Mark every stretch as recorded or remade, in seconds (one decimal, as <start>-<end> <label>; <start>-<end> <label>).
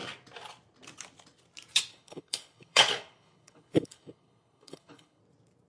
0.0-1.9 recorded; 1.9-5.2 remade; 5.2-5.7 recorded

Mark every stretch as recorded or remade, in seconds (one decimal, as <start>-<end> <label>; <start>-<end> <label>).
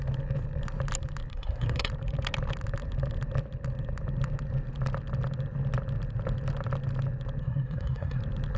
0.0-1.3 recorded; 1.3-1.9 remade; 1.9-7.4 recorded; 7.4-8.2 remade; 8.2-8.6 recorded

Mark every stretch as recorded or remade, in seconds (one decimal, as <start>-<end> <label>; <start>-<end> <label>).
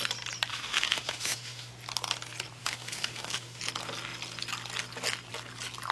0.0-0.5 recorded; 0.5-1.7 remade; 1.7-2.6 recorded; 2.6-3.6 remade; 3.6-5.9 recorded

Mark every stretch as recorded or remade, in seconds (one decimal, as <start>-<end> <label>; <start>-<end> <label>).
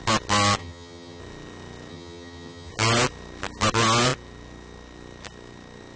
0.0-0.6 recorded; 0.6-1.2 remade; 1.2-1.9 recorded; 1.9-2.7 remade; 2.7-6.0 recorded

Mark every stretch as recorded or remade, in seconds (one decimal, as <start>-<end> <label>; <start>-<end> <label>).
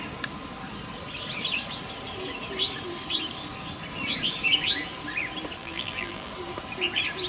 0.0-5.6 recorded; 5.6-6.3 remade; 6.3-7.3 recorded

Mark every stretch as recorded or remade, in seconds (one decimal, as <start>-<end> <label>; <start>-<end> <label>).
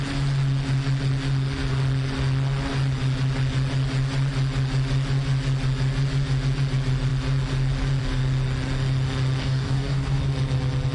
0.0-9.4 recorded; 9.4-10.2 remade; 10.2-10.9 recorded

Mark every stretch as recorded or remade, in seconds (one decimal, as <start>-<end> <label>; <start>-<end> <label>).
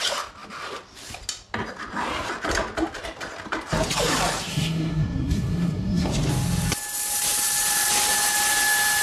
0.0-4.5 recorded; 4.5-6.1 remade; 6.1-9.0 recorded